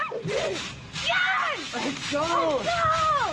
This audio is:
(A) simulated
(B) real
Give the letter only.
B